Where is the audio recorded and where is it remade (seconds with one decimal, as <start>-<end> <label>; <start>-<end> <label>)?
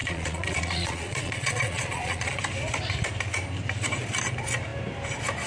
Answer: 0.0-2.4 remade; 2.4-5.5 recorded